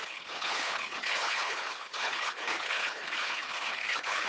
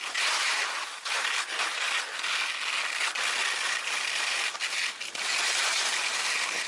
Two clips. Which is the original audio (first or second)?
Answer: second